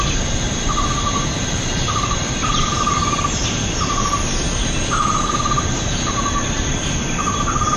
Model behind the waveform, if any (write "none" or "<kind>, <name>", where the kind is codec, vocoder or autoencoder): vocoder, BigVGAN v2